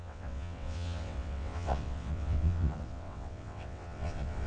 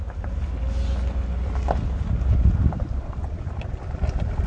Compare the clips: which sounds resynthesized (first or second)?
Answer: first